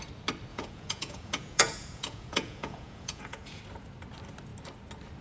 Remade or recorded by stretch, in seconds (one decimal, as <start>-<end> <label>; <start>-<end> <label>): 0.0-0.5 recorded; 0.5-3.6 remade; 3.6-5.2 recorded